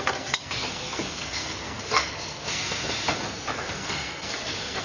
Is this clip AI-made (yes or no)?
yes